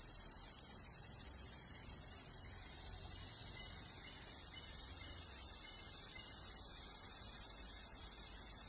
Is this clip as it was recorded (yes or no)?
yes